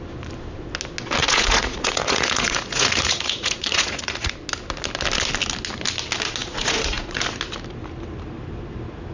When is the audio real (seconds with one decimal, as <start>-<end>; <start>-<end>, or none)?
0.0-1.2; 4.3-6.4; 7.2-9.1